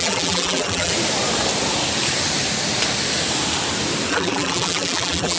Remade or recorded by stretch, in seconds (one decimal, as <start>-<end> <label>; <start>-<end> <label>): 0.0-0.9 remade; 0.9-4.1 recorded; 4.1-5.4 remade